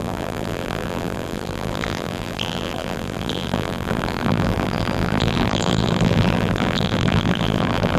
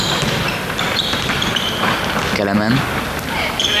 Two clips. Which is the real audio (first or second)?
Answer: second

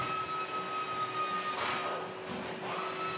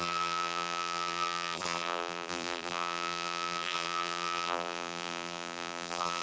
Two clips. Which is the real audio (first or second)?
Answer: first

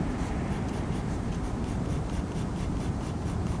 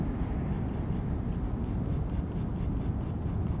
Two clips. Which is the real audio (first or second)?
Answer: second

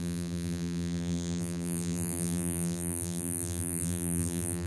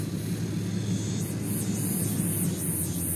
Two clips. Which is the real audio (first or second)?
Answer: second